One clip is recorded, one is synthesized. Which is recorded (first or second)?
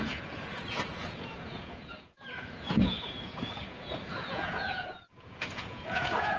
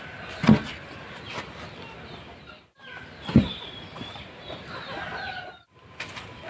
second